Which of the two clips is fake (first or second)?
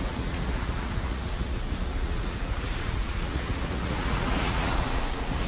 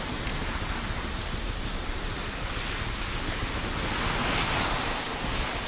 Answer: first